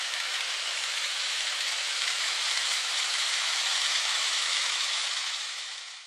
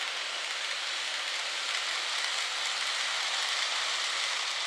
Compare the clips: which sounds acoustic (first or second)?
second